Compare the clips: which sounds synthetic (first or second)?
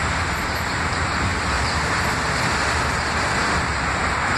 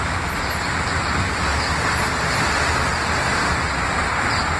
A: first